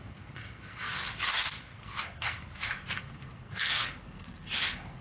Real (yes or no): no